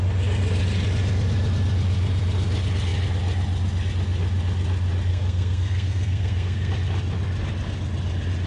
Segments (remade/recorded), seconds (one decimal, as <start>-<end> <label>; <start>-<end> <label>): 0.0-5.1 recorded; 5.1-6.7 remade; 6.7-8.5 recorded